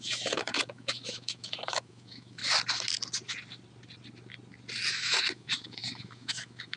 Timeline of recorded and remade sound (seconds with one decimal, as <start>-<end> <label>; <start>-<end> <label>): 0.0-2.4 remade; 2.4-4.9 recorded; 4.9-6.8 remade